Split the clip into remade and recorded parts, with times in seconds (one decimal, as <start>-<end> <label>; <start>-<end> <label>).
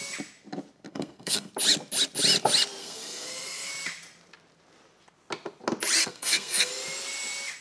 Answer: 0.0-0.9 recorded; 0.9-1.5 remade; 1.5-2.8 recorded; 2.8-3.7 remade; 3.7-6.0 recorded; 6.0-6.7 remade; 6.7-7.6 recorded